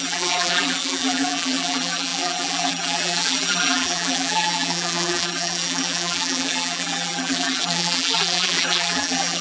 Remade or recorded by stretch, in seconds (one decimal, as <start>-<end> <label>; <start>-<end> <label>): 0.0-9.4 remade